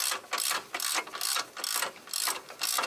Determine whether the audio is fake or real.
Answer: real